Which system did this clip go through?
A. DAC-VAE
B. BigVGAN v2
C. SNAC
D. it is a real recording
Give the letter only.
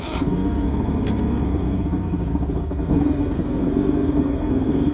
C